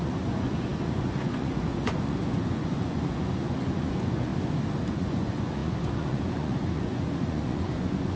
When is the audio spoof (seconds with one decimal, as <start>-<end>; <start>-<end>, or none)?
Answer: 0.0-4.3; 4.8-8.2